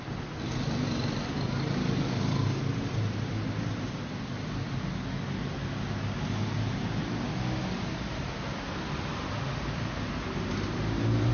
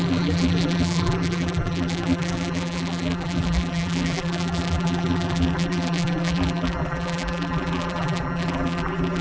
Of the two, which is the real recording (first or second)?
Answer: first